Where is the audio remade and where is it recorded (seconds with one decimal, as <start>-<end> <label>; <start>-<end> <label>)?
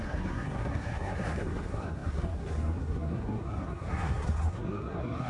0.0-5.3 remade